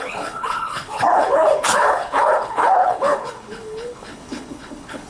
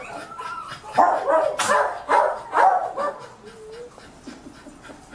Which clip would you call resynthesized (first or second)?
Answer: first